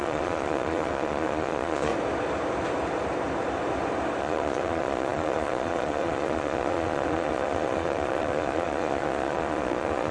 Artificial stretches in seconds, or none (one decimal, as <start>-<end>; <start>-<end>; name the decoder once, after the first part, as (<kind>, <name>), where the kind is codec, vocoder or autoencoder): 0.0-1.9 (vocoder, Vocos); 4.2-10.1